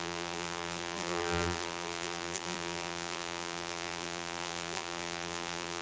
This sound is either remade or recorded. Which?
remade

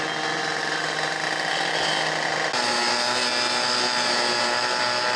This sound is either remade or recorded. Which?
recorded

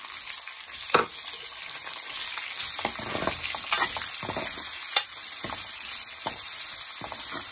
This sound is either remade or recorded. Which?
recorded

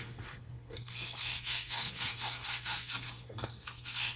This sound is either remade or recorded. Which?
remade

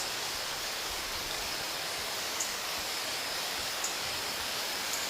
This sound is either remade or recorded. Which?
remade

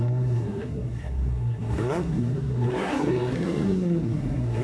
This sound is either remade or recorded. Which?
remade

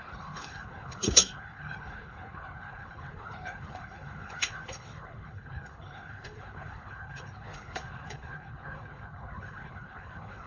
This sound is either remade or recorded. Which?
remade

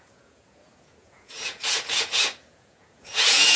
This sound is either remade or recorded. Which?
remade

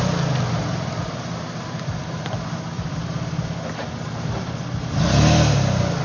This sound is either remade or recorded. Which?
recorded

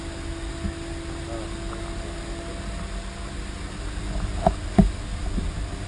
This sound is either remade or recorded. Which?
recorded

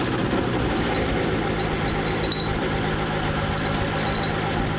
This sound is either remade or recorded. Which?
recorded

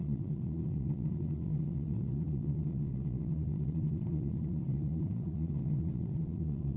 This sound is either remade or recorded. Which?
remade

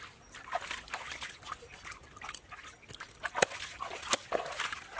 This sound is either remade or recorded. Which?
recorded